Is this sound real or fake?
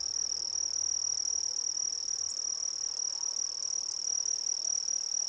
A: real